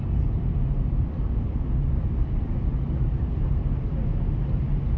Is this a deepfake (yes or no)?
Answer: yes